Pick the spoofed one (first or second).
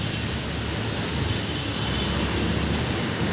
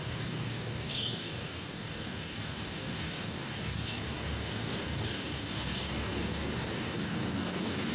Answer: second